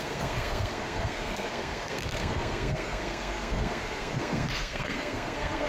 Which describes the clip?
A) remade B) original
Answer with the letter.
A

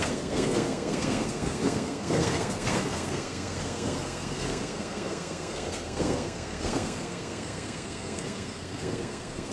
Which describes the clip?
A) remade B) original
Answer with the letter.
A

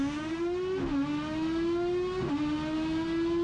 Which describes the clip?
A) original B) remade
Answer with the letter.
A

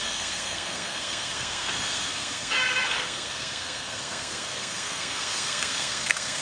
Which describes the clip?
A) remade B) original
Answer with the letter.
A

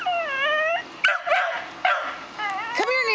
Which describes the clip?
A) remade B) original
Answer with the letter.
B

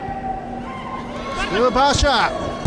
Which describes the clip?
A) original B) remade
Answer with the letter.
A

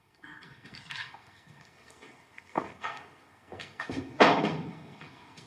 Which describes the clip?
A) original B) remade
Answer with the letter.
B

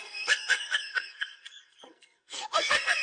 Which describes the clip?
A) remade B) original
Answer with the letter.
A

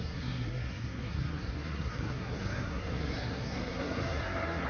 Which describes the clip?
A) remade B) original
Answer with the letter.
A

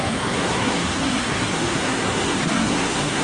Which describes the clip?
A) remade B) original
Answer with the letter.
A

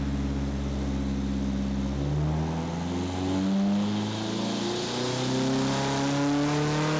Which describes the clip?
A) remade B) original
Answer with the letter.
B